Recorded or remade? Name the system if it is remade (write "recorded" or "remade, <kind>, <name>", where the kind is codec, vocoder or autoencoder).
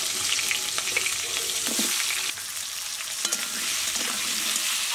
recorded